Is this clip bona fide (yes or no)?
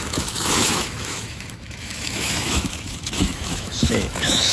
no